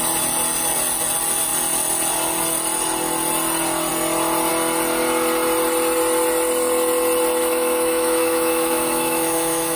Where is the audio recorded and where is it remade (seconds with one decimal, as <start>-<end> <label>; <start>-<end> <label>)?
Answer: 0.0-7.4 recorded; 7.4-9.8 remade